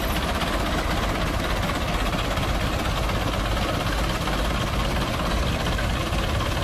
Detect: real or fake real